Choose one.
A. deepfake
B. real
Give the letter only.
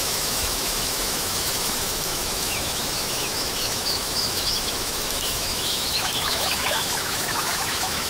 A